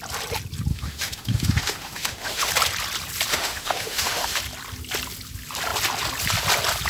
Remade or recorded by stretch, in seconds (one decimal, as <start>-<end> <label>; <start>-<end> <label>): 0.0-0.7 recorded; 0.7-2.5 remade; 2.5-3.3 recorded; 3.3-4.4 remade; 4.4-6.9 recorded